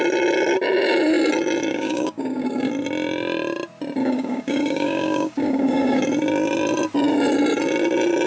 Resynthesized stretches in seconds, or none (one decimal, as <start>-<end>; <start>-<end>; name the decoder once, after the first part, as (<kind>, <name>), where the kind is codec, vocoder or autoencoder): 1.7-2.7 (codec, DAC); 4.0-6.0